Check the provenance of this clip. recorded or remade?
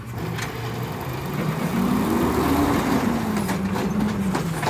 recorded